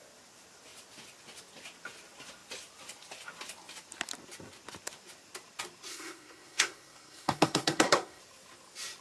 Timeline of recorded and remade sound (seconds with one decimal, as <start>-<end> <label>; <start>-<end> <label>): 0.0-5.9 recorded; 5.9-8.2 remade; 8.2-9.0 recorded